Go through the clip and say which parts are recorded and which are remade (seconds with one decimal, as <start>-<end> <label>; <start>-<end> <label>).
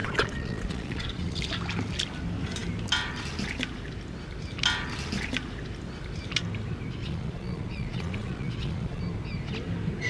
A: 0.0-1.4 remade; 1.4-7.0 recorded; 7.0-9.0 remade; 9.0-10.1 recorded